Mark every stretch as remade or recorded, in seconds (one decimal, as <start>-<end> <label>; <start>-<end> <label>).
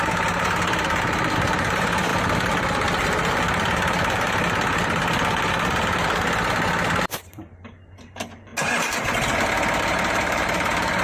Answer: 0.0-2.1 remade; 2.1-7.1 recorded; 7.1-8.5 remade; 8.5-9.8 recorded; 9.8-11.0 remade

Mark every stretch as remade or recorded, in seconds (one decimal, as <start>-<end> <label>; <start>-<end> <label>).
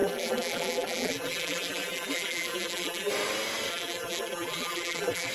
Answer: 0.0-3.1 remade; 3.1-3.7 recorded; 3.7-5.3 remade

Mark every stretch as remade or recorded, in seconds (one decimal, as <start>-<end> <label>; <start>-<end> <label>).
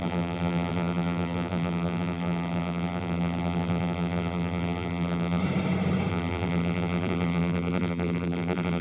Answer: 0.0-5.4 remade; 5.4-6.1 recorded; 6.1-8.8 remade